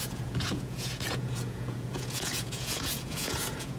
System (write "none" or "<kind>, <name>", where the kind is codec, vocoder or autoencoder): vocoder, Vocos